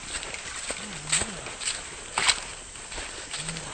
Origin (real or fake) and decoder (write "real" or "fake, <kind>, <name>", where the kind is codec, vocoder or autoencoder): real